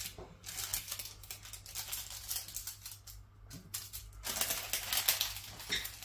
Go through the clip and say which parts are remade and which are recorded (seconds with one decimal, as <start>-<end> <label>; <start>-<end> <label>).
0.0-6.0 recorded